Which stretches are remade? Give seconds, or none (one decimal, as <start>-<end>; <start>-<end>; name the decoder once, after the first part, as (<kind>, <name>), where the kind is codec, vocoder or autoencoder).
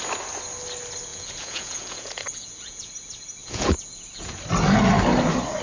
1.1-2.9 (vocoder, Vocos); 3.4-4.4